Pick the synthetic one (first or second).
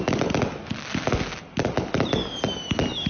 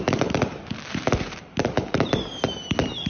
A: second